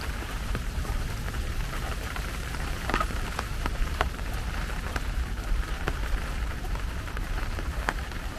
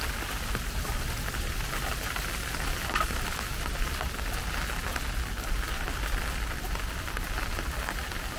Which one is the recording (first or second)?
second